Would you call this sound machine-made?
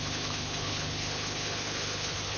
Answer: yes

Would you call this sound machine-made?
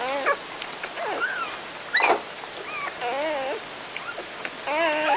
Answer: no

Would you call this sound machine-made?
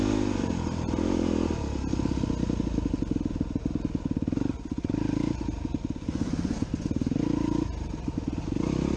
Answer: no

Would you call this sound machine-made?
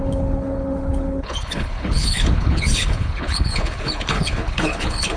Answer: yes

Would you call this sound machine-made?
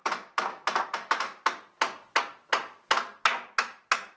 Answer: no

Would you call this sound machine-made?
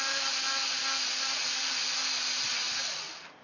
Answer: no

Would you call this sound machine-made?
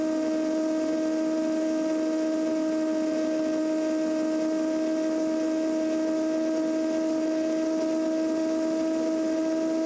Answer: no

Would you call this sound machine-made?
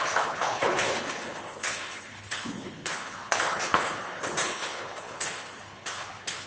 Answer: yes